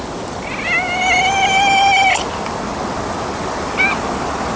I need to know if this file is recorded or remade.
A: recorded